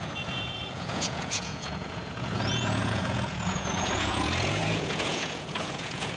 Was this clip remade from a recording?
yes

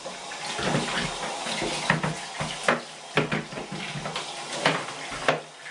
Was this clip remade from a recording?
no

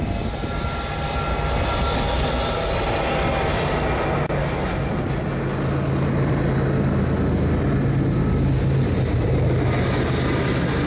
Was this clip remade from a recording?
no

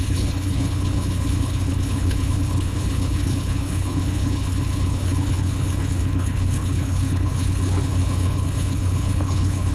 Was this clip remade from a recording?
yes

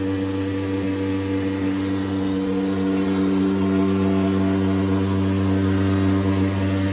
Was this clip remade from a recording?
no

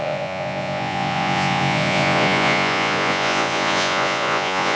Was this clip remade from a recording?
yes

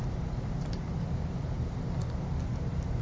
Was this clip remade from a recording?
no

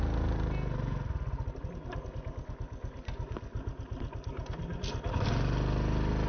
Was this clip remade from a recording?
no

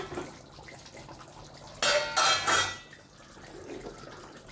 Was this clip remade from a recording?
no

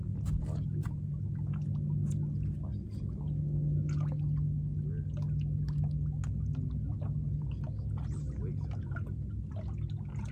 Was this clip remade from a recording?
no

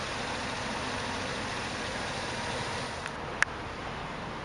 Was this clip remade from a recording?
no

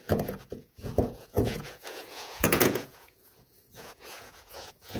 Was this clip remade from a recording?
yes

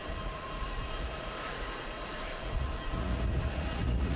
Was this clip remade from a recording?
yes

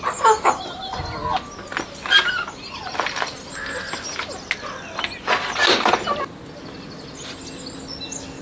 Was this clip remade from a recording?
no